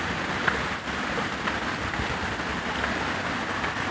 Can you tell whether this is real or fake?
real